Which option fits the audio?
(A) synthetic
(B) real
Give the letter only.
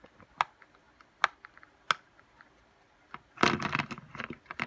B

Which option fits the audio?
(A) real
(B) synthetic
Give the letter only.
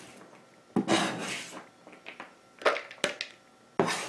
A